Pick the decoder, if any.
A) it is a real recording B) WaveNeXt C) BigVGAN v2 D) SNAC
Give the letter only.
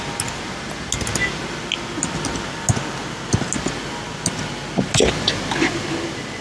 A